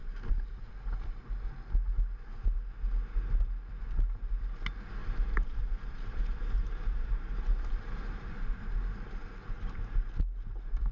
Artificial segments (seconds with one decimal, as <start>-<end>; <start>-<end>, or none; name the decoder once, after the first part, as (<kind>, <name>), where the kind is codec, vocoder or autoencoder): 0.0-0.7 (vocoder, BigVGAN v2); 5.0-8.7